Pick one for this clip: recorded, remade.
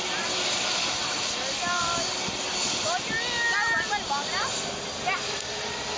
recorded